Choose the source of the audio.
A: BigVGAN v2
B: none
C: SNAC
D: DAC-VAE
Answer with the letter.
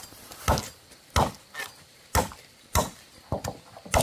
B